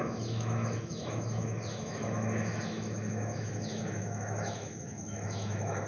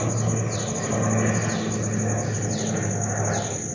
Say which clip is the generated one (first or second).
first